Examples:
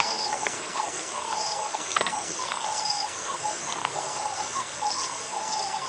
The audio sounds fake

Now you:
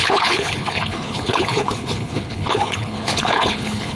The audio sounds fake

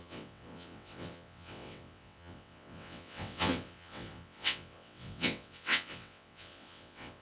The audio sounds fake